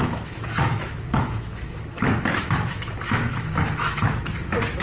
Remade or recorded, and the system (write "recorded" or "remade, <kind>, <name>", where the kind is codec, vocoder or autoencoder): remade, autoencoder, DAC-VAE